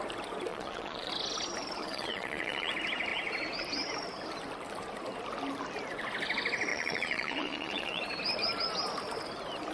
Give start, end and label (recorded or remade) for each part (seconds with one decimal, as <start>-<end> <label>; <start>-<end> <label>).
0.0-0.5 recorded; 0.5-1.1 remade; 1.1-1.8 recorded; 1.8-2.7 remade; 2.7-6.7 recorded; 6.7-8.0 remade; 8.0-9.7 recorded